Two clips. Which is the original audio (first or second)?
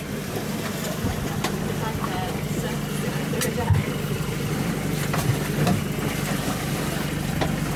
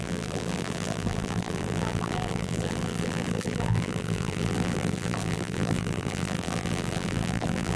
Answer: first